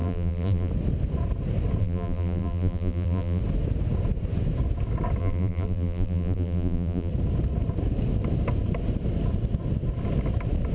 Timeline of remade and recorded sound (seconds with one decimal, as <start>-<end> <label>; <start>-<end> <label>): 0.0-0.7 remade; 0.7-1.8 recorded; 1.8-3.4 remade; 3.4-5.2 recorded; 5.2-7.1 remade; 7.1-10.7 recorded

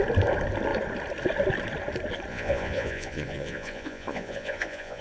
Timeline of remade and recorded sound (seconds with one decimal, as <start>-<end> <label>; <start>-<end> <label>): 0.0-2.3 recorded; 2.3-5.0 remade

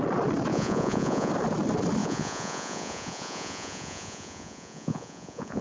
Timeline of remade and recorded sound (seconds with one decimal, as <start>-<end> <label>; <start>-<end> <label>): 0.0-0.5 recorded; 0.5-1.3 remade; 1.3-2.0 recorded; 2.0-5.6 remade